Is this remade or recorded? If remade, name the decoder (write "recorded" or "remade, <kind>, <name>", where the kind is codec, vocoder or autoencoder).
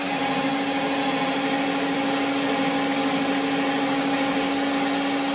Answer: recorded